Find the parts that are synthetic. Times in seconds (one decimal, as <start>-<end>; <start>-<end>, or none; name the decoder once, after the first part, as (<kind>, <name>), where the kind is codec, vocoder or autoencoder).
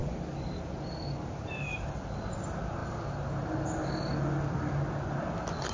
none